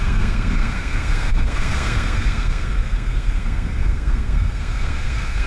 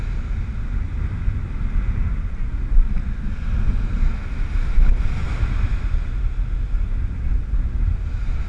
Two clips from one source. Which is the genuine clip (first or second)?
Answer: second